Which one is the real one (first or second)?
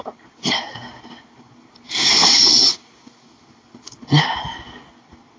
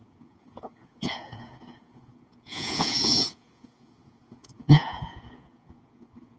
first